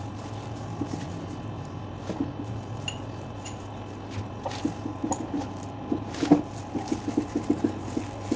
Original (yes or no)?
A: yes